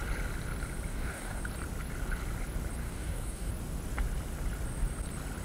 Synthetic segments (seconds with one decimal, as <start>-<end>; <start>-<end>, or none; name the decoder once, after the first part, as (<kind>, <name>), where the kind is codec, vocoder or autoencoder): 0.9-1.4 (codec, DAC); 2.8-3.5